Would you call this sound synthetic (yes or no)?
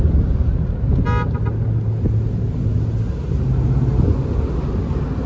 no